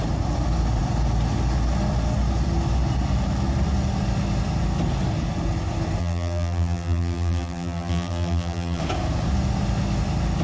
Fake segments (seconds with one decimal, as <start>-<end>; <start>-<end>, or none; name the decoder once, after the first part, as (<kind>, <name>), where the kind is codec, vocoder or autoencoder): 6.0-8.8 (vocoder, BigVGAN v2)